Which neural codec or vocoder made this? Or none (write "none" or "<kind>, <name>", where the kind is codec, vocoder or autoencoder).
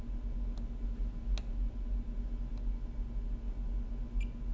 none